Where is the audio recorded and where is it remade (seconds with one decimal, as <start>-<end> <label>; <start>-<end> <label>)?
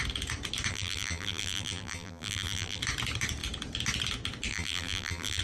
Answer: 0.0-0.7 recorded; 0.7-2.8 remade; 2.8-4.5 recorded; 4.5-5.4 remade